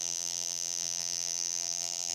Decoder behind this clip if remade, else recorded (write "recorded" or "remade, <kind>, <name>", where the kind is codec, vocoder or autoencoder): remade, vocoder, BigVGAN v2